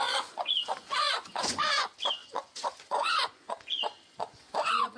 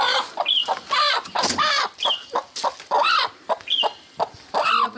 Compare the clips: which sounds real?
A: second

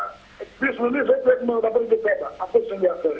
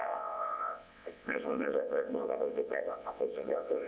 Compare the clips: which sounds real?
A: first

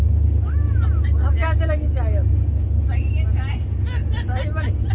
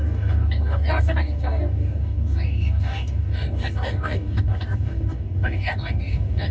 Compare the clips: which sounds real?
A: first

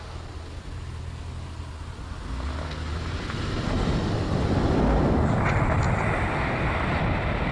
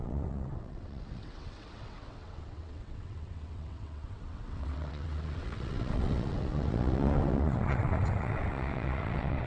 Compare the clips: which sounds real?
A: first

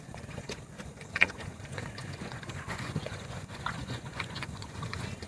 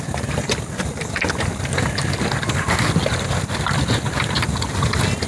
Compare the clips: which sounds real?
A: second